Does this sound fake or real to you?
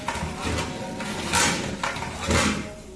real